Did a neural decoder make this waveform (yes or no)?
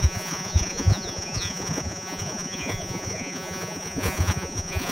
yes